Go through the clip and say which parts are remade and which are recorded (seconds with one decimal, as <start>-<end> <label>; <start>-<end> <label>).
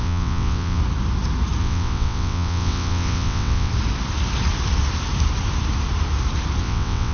0.0-0.8 remade; 0.8-1.6 recorded; 1.6-3.7 remade; 3.7-6.6 recorded; 6.6-7.1 remade